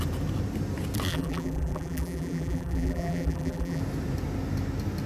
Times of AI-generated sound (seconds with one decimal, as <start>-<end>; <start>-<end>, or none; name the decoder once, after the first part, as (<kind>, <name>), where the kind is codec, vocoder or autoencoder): 1.1-3.8 (vocoder, BigVGAN v2)